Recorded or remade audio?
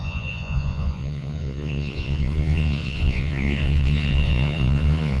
remade